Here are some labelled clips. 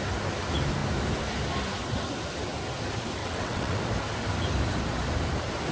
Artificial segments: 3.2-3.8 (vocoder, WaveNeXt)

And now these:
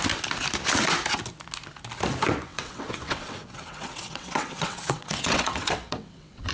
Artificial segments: 2.5-6.5 (vocoder, WaveNeXt)

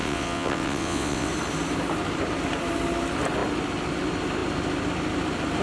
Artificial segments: 0.0-1.3 (vocoder, WaveNeXt)